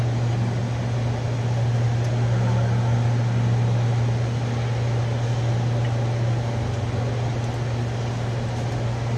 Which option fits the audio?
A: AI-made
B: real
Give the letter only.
B